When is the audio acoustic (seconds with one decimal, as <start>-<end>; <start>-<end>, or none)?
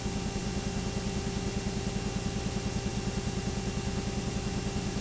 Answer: 0.0-5.0